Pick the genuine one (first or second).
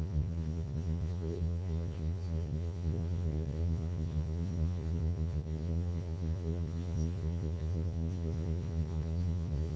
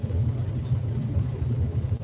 second